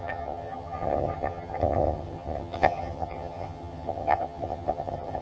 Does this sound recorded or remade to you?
remade